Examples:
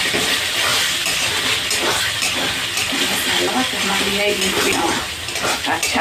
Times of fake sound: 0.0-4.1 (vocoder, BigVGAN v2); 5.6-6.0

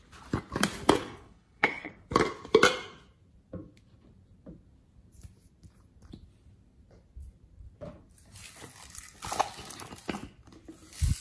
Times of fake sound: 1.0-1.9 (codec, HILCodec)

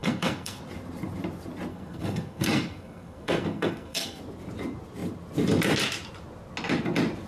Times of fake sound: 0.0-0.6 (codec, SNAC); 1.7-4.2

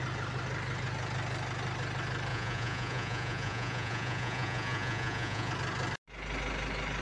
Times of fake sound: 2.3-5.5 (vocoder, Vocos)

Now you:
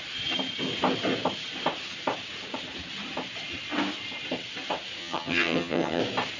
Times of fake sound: 5.0-6.0 (vocoder, HiFi-GAN)

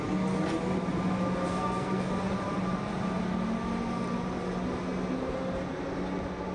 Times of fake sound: 1.5-2.1 (codec, SNAC)

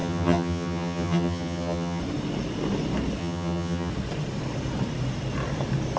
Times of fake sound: 0.0-2.0 (vocoder, HiFi-GAN); 3.2-3.9

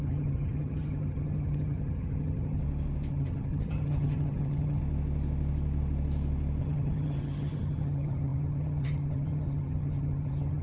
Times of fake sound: 0.0-2.6 (vocoder, HiFi-GAN); 3.1-4.8; 6.6-10.6